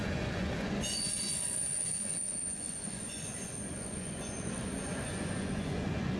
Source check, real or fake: fake